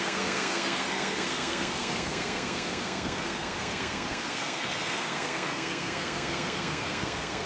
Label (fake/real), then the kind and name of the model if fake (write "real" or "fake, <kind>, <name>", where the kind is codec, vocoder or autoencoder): fake, codec, SNAC